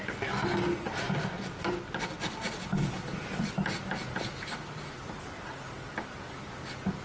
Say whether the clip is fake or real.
real